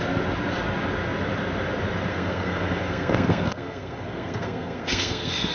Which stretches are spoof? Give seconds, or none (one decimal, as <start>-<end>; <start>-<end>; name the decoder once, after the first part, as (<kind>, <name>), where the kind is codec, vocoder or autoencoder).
2.1-5.5 (codec, SNAC)